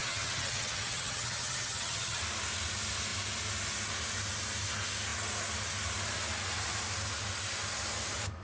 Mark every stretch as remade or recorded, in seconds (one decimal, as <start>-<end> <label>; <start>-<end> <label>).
0.0-2.2 remade; 2.2-8.4 recorded